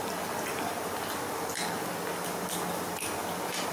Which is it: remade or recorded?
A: recorded